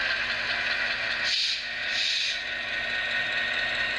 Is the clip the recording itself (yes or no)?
yes